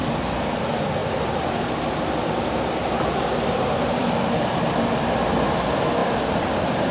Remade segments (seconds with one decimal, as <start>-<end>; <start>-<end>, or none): none

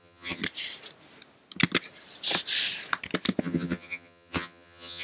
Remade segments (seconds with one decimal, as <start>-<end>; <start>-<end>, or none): 0.0-0.4; 3.4-5.0

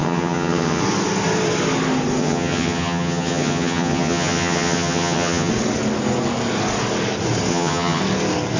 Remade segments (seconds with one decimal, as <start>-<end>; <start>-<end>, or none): 0.0-0.8; 2.2-5.5; 7.5-8.0